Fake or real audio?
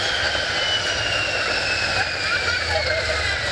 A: real